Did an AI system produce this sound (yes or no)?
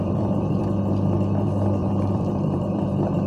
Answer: yes